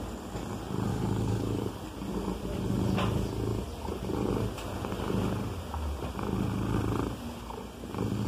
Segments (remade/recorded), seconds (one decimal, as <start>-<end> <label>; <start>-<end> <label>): 0.0-0.9 recorded; 0.9-1.7 remade; 1.7-8.3 recorded